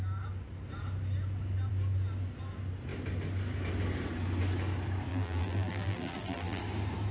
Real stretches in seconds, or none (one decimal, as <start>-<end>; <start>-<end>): 0.0-5.1; 6.6-7.1